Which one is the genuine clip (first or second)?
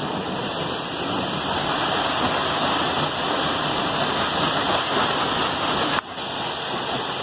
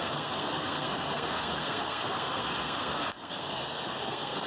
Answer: first